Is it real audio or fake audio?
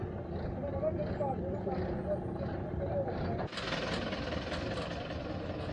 real